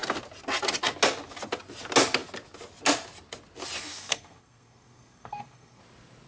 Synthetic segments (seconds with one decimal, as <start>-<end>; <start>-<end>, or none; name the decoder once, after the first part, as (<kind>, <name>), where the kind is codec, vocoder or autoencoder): 3.8-5.8 (codec, SNAC)